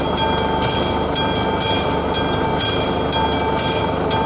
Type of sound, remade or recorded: recorded